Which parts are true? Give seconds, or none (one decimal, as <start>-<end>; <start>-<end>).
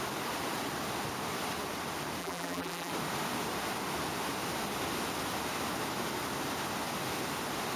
0.0-2.2; 2.9-7.8